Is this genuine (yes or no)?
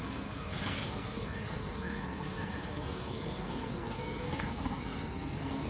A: no